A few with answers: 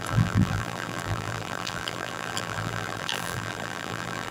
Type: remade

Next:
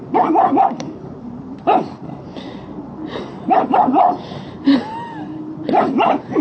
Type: remade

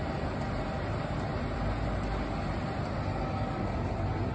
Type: recorded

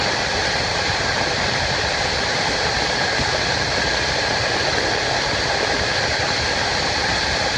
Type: remade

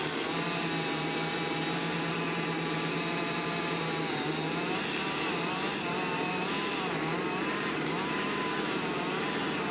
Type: remade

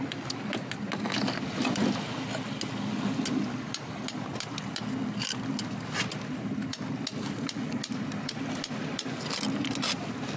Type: recorded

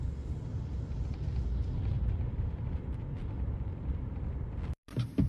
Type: remade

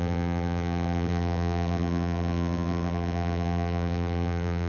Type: remade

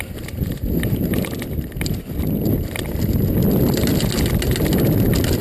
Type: recorded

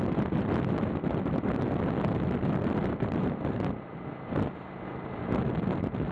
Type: recorded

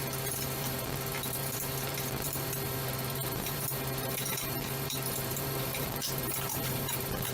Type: remade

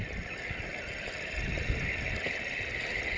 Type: remade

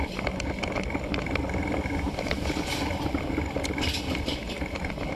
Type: recorded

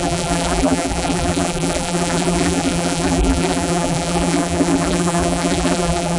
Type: remade